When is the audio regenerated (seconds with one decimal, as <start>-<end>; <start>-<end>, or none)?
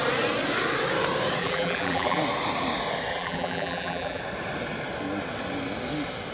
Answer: 1.4-2.2; 3.1-4.2